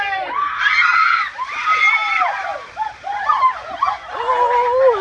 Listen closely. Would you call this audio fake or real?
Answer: real